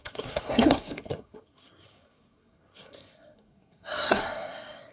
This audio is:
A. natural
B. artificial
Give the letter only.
B